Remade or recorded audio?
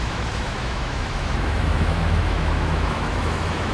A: remade